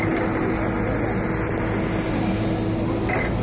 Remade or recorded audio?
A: recorded